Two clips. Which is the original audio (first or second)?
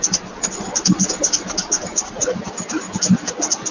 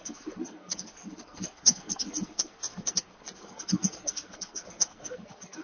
first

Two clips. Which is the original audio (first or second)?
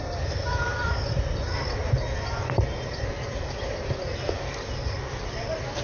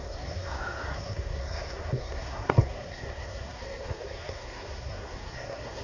first